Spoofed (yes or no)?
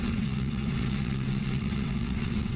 yes